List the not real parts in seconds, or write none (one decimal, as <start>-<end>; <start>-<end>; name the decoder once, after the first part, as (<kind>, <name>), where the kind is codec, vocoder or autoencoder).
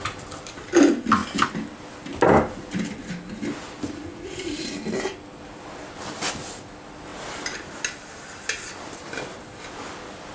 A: none